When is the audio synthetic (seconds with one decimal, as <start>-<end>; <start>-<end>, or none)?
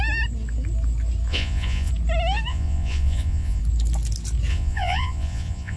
1.3-1.9; 2.5-3.6; 4.5-5.8